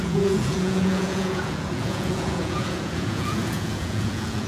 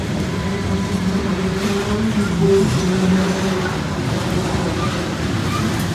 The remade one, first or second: first